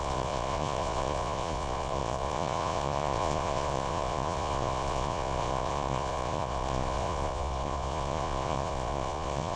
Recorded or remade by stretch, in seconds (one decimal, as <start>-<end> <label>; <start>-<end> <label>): 0.0-9.6 remade